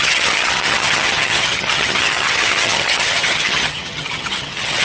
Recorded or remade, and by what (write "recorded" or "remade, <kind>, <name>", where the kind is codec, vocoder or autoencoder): remade, vocoder, HiFi-GAN